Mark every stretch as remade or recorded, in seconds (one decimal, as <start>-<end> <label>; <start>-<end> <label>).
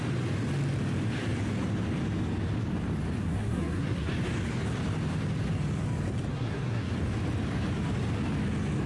0.0-3.2 recorded; 3.2-4.1 remade; 4.1-6.3 recorded; 6.3-6.9 remade; 6.9-8.9 recorded